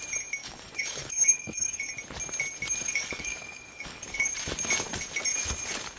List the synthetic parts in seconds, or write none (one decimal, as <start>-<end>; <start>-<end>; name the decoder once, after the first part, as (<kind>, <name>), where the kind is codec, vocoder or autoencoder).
0.4-1.9 (codec, DAC); 2.8-4.3